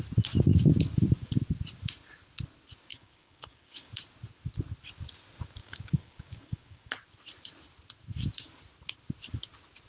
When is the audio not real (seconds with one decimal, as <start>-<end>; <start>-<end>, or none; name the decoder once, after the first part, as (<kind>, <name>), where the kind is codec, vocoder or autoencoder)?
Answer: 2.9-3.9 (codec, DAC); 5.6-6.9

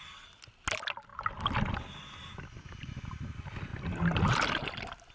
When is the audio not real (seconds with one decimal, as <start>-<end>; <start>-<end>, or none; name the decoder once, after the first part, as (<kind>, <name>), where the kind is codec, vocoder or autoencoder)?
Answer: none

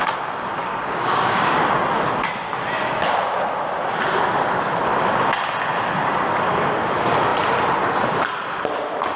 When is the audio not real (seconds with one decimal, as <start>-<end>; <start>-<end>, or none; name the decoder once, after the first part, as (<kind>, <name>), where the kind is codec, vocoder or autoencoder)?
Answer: 0.6-1.5 (codec, DAC)

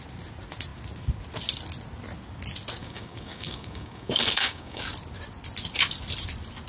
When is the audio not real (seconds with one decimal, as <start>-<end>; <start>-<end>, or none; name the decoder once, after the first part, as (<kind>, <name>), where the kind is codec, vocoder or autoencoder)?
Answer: 2.8-4.8 (codec, DAC)